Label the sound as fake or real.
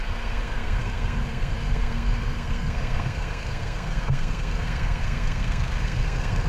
fake